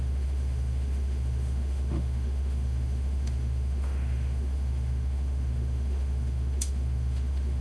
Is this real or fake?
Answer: fake